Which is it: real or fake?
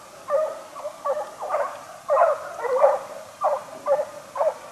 real